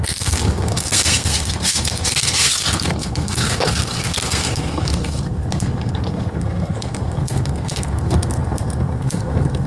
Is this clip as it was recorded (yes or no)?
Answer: no